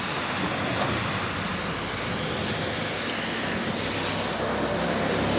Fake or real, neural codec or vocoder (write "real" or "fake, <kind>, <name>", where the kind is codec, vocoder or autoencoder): real